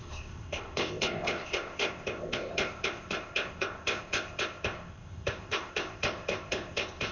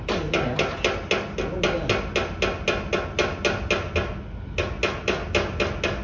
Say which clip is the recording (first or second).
second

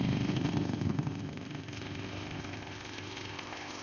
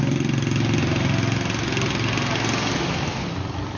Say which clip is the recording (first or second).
second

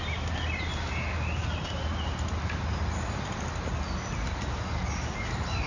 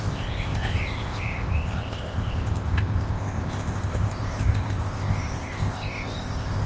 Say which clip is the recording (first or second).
first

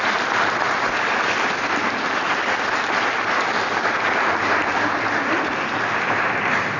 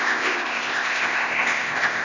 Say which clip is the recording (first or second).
first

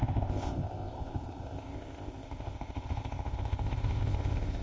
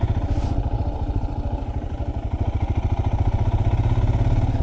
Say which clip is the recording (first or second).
second